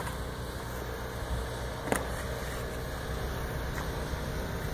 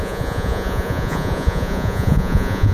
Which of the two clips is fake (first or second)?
second